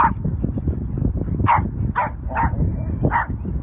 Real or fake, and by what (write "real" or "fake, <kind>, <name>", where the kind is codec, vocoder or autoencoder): real